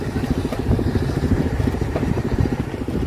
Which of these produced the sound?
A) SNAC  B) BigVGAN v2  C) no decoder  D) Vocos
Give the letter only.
B